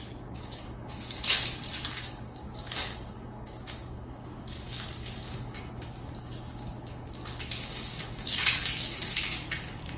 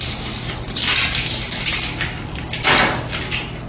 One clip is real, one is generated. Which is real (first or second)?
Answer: second